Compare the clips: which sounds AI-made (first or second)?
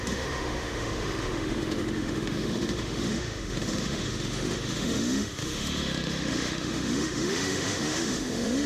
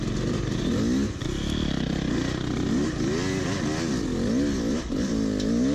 first